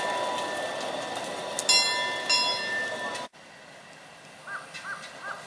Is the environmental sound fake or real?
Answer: real